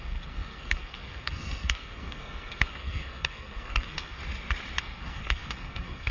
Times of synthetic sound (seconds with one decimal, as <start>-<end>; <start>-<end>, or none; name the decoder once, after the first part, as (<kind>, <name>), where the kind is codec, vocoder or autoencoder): 0.0-4.2 (codec, SNAC); 4.8-6.1